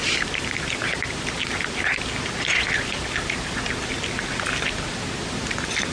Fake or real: fake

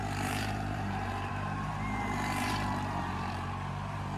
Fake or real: fake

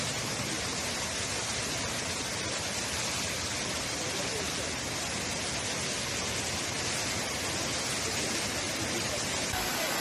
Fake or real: real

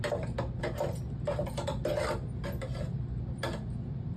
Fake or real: real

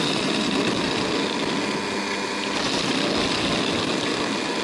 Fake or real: real